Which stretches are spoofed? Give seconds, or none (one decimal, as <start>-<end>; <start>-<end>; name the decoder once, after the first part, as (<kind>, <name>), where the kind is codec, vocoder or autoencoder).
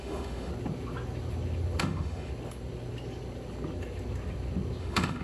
0.0-0.5 (autoencoder, DAC-VAE); 1.8-2.3; 4.8-5.2